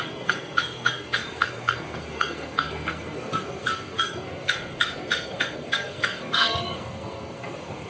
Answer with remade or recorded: remade